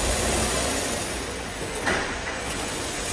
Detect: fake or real fake